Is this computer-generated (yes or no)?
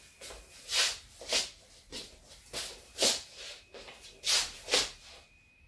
no